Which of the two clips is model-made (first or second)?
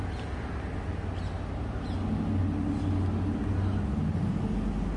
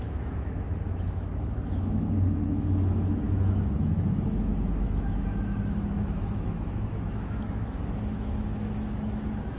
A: second